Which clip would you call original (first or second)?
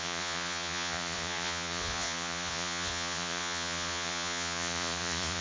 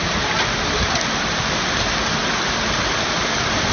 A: second